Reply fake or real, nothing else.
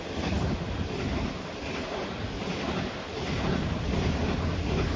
real